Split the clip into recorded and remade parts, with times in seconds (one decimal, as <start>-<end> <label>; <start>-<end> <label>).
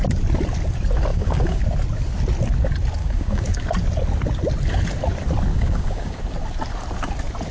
0.0-1.1 recorded; 1.1-1.6 remade; 1.6-3.0 recorded; 3.0-3.6 remade; 3.6-5.5 recorded; 5.5-6.2 remade; 6.2-7.5 recorded